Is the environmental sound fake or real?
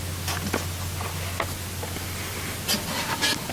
real